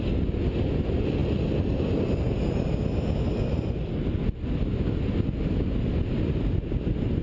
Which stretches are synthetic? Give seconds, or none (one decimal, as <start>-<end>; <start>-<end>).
none